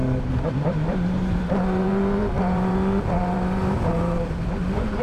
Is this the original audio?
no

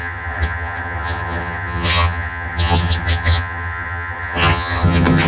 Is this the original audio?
no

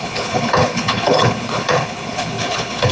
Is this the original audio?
no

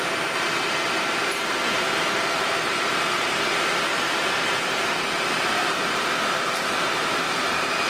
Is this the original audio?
no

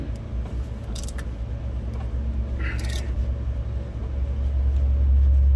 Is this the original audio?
yes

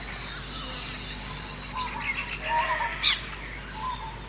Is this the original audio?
yes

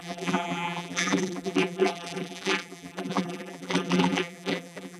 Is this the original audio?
no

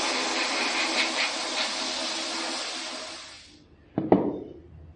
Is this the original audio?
yes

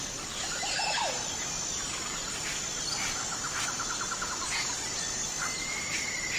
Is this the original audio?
yes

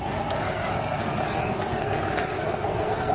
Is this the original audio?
no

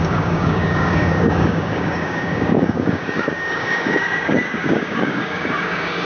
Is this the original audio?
no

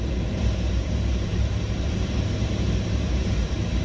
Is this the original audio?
no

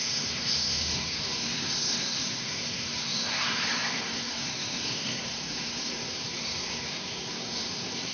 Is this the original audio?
no